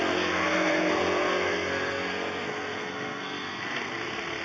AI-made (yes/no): yes